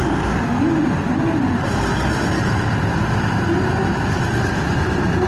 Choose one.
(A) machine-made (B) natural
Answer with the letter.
B